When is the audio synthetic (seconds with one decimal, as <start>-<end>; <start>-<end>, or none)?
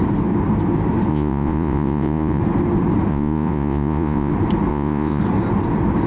1.1-2.4; 3.1-4.3; 4.7-5.2